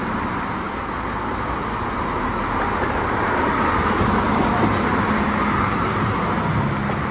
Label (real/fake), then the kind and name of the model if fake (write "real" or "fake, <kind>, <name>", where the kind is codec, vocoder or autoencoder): real